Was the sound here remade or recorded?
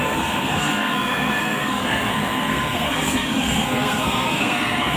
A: remade